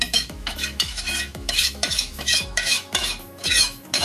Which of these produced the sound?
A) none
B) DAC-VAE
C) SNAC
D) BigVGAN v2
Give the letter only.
B